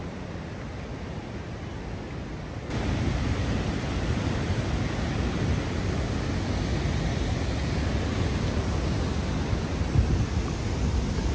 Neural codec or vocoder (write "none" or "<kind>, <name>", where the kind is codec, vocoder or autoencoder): none